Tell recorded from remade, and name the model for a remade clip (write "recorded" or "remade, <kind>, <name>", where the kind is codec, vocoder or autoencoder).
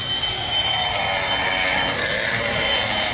recorded